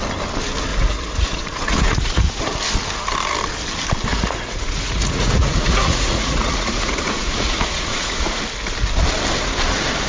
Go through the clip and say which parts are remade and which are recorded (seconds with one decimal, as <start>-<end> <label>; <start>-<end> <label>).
0.0-0.7 recorded; 0.7-2.4 remade; 2.4-4.1 recorded; 4.1-8.4 remade; 8.4-10.1 recorded